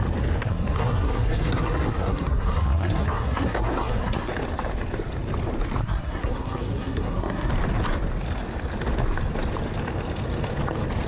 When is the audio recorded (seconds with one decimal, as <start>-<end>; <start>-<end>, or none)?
0.0-0.4; 4.3-5.8; 7.5-11.1